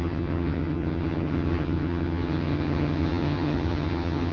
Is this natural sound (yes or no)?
no